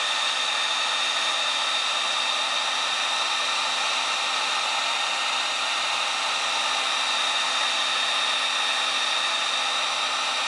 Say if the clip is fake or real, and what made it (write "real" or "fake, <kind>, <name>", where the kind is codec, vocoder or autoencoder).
real